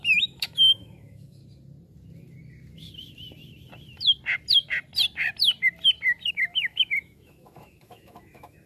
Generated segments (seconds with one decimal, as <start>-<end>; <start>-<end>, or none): 0.0-1.4; 6.3-8.7